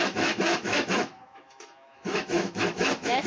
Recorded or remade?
remade